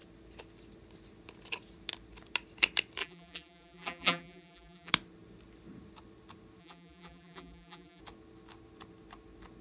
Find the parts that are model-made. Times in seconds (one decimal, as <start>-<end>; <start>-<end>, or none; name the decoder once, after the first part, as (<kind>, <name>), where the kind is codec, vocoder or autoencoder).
3.0-4.9 (vocoder, BigVGAN v2); 6.6-8.0